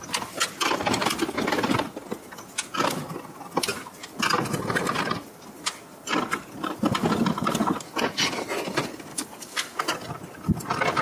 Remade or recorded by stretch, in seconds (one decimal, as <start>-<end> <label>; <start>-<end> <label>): 0.0-9.1 recorded; 9.1-9.8 remade; 9.8-11.0 recorded